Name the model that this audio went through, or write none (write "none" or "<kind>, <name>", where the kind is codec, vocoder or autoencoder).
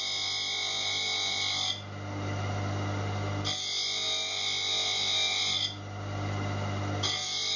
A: none